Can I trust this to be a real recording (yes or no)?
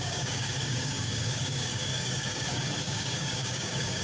no